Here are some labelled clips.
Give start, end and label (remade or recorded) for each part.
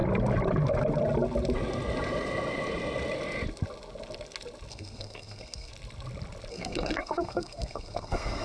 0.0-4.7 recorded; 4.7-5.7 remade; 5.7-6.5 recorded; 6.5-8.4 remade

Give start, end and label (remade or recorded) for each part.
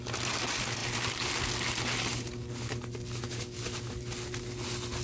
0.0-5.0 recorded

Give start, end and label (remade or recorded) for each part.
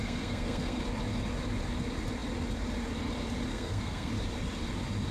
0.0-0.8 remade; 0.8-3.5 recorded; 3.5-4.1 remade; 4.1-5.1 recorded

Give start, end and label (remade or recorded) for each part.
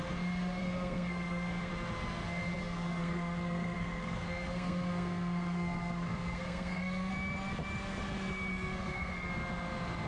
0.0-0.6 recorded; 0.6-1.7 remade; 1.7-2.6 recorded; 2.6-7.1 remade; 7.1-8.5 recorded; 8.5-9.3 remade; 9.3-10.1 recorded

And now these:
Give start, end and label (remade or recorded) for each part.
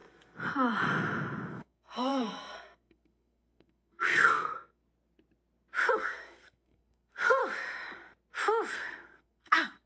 0.0-1.5 recorded; 1.5-4.8 remade; 4.8-5.9 recorded; 5.9-7.4 remade; 7.4-8.7 recorded; 8.7-9.9 remade